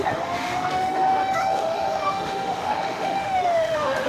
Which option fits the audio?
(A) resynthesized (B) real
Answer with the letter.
A